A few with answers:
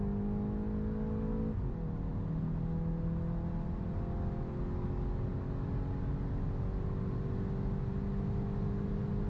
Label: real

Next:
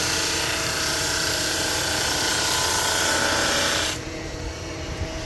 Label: fake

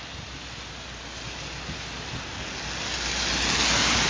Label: real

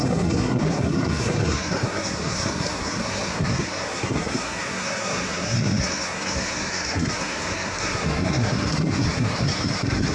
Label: fake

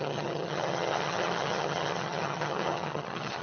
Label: fake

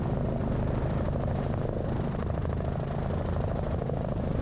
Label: fake